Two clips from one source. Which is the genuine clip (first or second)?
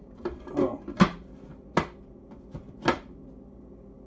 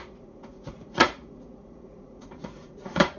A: first